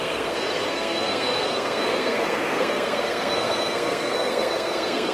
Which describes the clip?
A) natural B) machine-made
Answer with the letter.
B